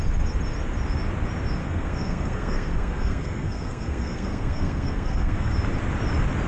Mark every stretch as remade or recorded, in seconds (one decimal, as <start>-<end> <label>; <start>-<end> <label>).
0.0-1.6 recorded; 1.6-5.5 remade; 5.5-6.5 recorded